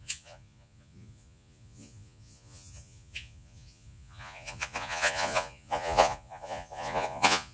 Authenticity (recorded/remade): remade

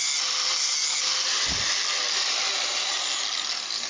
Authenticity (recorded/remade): recorded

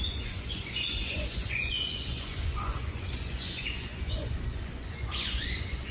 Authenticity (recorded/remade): remade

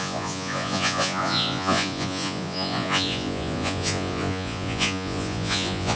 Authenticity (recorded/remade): remade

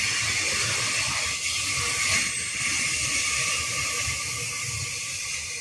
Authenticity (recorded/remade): recorded